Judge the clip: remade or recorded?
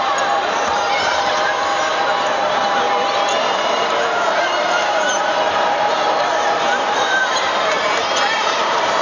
remade